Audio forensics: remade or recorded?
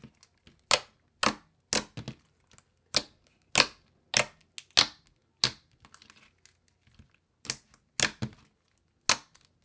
recorded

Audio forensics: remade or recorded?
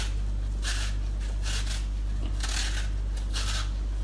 recorded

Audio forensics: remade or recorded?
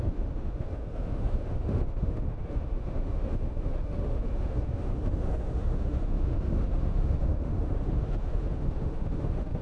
remade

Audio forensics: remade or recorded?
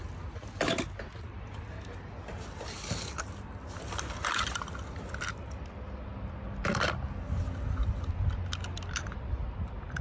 recorded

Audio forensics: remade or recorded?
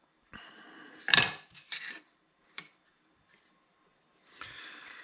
remade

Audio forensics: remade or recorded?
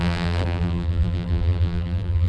remade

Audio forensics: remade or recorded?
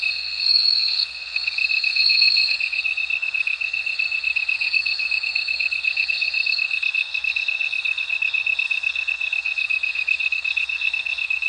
remade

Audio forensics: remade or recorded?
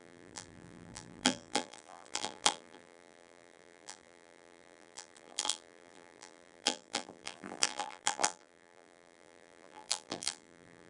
remade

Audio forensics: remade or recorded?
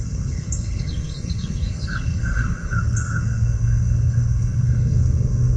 remade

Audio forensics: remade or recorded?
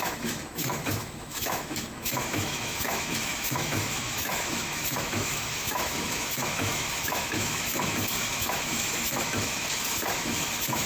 remade